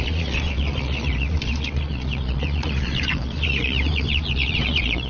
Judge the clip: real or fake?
fake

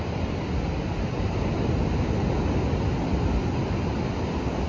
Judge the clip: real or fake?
real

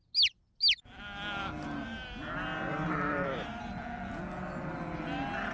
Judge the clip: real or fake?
real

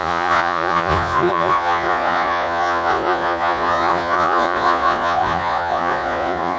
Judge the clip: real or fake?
fake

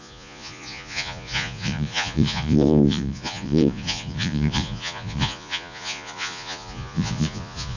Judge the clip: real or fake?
fake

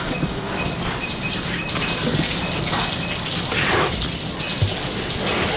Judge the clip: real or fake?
real